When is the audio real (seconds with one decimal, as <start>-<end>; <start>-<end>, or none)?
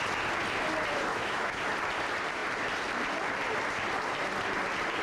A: 0.0-1.1; 1.6-5.0